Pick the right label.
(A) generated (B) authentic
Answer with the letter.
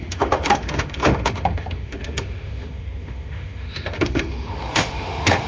A